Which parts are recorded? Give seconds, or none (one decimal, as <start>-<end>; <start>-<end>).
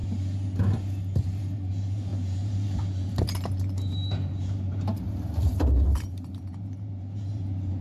0.0-1.4